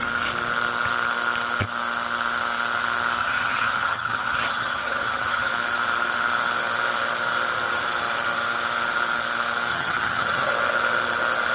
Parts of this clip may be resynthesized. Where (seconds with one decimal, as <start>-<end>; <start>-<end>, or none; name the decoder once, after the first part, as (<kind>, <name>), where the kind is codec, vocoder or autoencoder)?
3.2-5.5 (vocoder, HiFi-GAN); 9.7-10.5